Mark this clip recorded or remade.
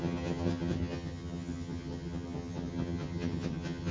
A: remade